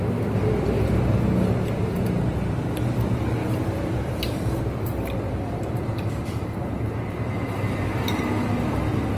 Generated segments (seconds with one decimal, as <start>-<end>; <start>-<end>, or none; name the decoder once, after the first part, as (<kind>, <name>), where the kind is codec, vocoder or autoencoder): 3.4-8.2 (vocoder, BigVGAN v2)